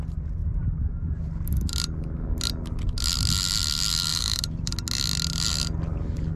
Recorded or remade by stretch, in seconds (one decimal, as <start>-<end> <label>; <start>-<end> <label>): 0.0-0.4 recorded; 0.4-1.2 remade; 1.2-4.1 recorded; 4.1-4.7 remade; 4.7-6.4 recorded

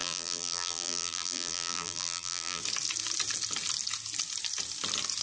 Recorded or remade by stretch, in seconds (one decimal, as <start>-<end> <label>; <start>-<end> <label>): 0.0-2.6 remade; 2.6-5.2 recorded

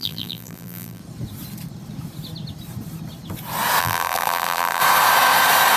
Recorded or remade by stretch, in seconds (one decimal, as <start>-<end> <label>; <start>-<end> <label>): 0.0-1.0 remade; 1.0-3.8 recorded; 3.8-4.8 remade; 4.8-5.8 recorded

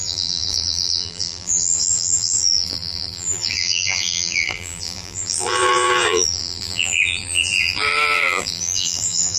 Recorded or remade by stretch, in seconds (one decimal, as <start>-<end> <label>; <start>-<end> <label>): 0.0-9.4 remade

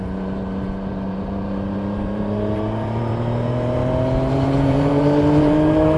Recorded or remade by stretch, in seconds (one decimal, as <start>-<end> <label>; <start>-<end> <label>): 0.0-3.8 remade; 3.8-4.3 recorded; 4.3-6.0 remade

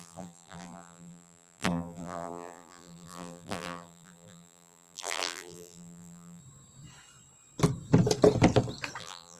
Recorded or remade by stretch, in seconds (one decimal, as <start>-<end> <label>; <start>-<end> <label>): 0.0-6.4 remade; 6.4-9.0 recorded; 9.0-9.4 remade